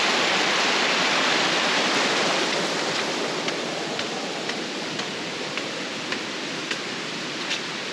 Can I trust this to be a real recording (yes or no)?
yes